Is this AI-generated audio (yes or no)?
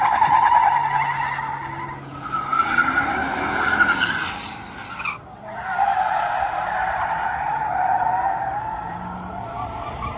no